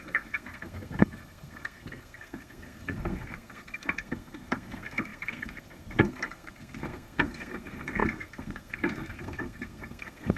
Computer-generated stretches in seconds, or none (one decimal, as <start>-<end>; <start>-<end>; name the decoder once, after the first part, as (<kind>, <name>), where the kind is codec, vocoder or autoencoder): 0.0-10.4 (codec, SNAC)